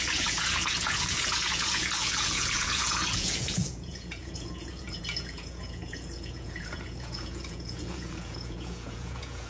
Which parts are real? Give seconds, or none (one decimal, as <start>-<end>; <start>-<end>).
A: none